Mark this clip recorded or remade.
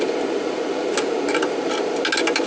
recorded